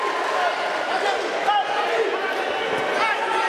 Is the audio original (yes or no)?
yes